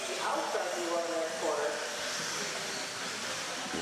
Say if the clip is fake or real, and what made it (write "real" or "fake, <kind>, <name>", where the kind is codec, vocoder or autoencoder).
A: real